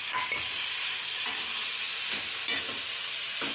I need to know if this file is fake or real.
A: real